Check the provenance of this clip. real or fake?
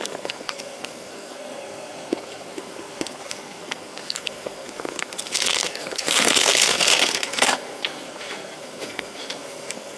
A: fake